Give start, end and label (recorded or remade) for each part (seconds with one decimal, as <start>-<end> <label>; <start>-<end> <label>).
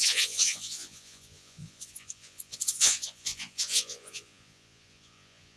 0.0-5.6 remade